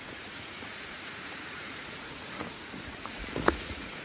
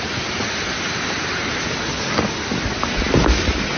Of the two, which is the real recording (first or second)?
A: second